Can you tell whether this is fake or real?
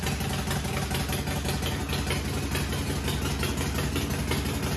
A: real